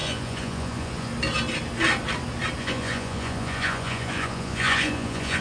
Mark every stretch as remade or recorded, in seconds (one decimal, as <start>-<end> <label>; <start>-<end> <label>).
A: 0.0-1.1 remade; 1.1-2.6 recorded; 2.6-5.4 remade